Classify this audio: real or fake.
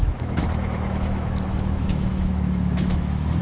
fake